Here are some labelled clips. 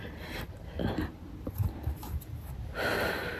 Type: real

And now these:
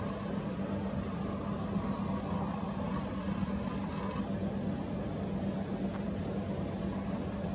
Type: real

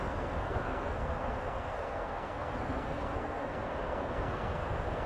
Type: fake